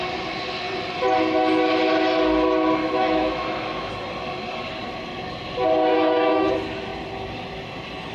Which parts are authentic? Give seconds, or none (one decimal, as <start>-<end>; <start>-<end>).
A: 0.0-2.8; 3.9-5.9; 6.5-8.1